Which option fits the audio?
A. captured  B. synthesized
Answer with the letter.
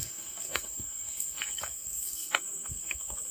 B